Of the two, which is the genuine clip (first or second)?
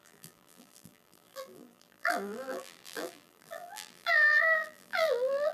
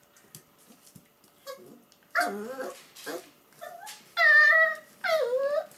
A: second